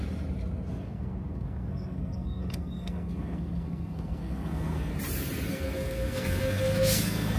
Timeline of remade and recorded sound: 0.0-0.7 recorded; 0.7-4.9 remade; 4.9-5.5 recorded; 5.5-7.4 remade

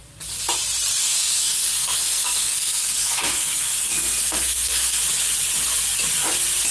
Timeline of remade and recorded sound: 0.0-1.0 recorded; 1.0-5.0 remade; 5.0-6.7 recorded

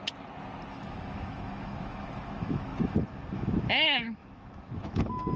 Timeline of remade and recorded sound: 0.0-0.7 recorded; 0.7-5.4 remade

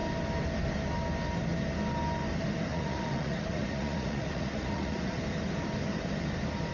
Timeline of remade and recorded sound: 0.0-2.7 recorded; 2.7-5.2 remade; 5.2-6.7 recorded

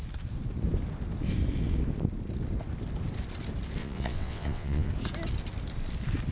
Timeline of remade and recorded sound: 0.0-3.8 recorded; 3.8-4.9 remade; 4.9-6.3 recorded

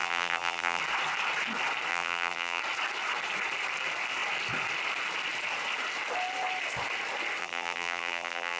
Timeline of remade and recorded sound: 0.0-0.8 remade; 0.8-1.9 recorded; 1.9-2.6 remade; 2.6-7.4 recorded; 7.4-8.6 remade